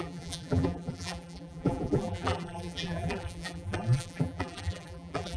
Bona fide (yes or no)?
no